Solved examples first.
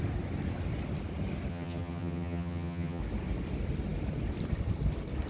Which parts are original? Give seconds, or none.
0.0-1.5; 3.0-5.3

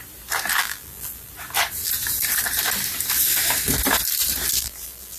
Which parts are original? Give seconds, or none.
0.0-0.6; 1.3-4.6

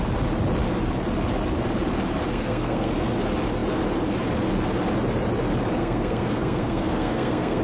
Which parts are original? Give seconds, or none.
0.0-2.3; 2.9-5.8

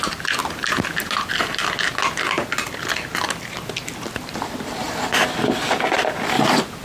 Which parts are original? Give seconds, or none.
0.0-6.8

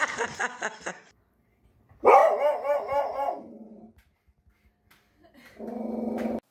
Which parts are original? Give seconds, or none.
0.0-6.5

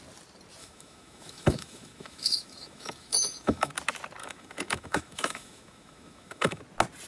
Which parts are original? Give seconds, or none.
0.0-0.6; 3.7-4.2; 6.6-7.1

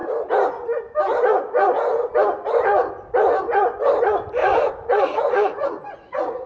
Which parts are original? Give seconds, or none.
0.0-4.4